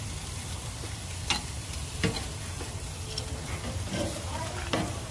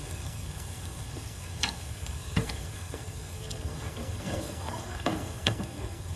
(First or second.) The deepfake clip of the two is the second